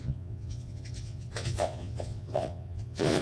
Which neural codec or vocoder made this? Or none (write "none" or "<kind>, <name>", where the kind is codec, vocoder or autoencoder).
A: vocoder, Vocos